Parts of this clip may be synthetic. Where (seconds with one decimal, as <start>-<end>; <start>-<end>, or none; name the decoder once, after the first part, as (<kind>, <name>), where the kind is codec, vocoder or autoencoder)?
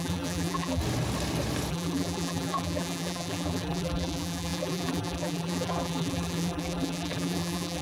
0.0-0.8 (vocoder, BigVGAN v2); 1.7-7.8